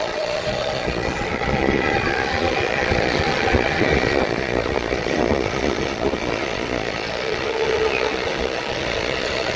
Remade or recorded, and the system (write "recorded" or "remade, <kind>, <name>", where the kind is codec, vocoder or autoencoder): remade, vocoder, Vocos